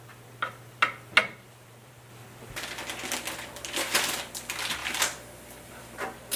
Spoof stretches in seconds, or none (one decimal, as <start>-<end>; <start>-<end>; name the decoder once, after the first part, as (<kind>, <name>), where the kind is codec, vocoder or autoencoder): 1.2-2.1 (vocoder, BigVGAN v2); 4.8-5.8